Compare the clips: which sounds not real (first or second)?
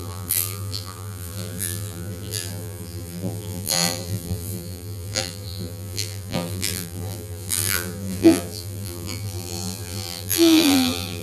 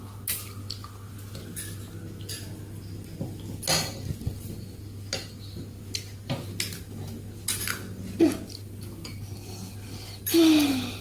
first